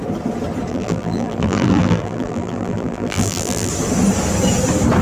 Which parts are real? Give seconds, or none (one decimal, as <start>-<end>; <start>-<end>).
0.0-0.7; 3.7-5.0